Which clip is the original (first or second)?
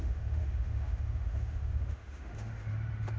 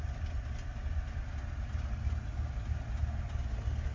second